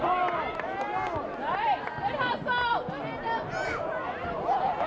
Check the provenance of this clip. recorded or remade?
recorded